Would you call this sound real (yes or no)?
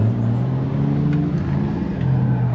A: yes